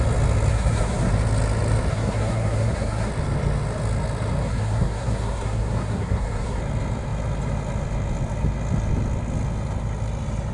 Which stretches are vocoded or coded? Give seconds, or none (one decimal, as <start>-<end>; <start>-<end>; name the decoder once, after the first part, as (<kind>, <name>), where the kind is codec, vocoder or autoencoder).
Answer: 0.5-1.1 (codec, SNAC); 1.9-3.1; 4.4-6.6